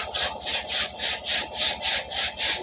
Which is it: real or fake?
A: real